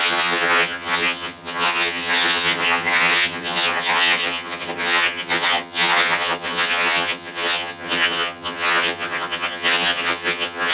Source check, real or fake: fake